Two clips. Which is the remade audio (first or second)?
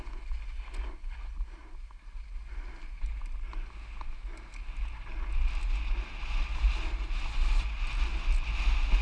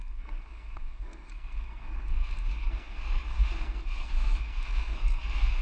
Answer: second